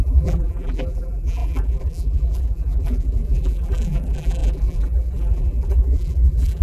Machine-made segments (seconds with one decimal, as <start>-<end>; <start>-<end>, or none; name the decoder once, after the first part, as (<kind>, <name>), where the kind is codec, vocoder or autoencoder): 0.0-6.6 (vocoder, BigVGAN v2)